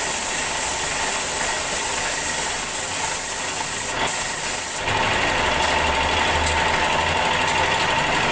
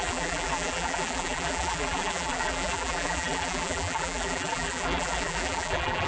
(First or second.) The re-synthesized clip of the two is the second